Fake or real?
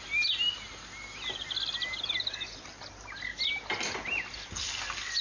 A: real